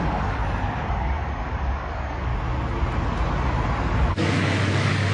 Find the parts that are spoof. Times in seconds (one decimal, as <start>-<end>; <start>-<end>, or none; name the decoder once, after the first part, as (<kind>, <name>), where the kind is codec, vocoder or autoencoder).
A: 0.0-0.4 (codec, DAC); 0.9-2.3; 4.1-5.1